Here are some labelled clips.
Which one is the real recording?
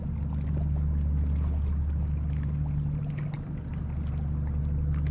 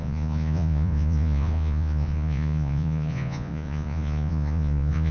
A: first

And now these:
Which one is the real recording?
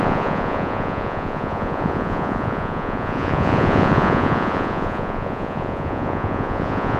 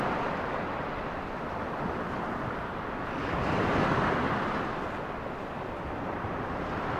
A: second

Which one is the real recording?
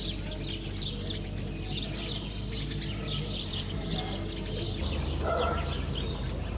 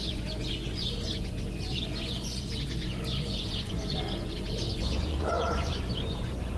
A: first